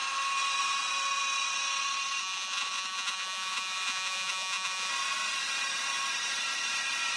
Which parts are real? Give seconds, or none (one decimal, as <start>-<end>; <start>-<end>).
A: 0.0-2.2; 4.9-7.2